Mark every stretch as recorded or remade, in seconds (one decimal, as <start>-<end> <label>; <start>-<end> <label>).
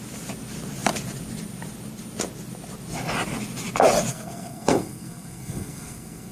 0.0-4.1 recorded; 4.1-6.3 remade